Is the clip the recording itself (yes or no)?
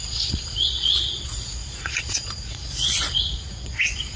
no